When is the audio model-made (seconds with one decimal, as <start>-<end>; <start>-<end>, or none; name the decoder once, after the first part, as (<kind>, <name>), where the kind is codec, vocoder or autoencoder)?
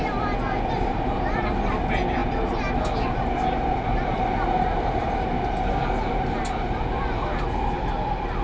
none